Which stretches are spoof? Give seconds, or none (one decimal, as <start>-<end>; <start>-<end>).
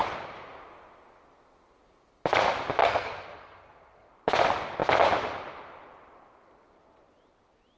2.8-4.1